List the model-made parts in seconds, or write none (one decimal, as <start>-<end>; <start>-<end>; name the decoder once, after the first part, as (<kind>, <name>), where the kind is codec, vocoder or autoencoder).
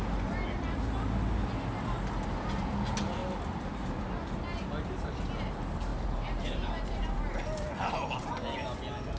5.9-7.1 (vocoder, BigVGAN v2)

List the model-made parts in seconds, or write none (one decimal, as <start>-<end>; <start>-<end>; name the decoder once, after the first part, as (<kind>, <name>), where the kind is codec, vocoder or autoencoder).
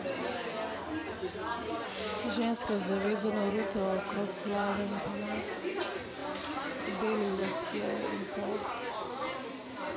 6.2-6.8 (vocoder, BigVGAN v2); 7.4-8.0